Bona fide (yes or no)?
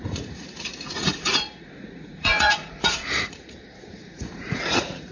no